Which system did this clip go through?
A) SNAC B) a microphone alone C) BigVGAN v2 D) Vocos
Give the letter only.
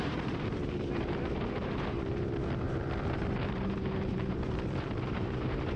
C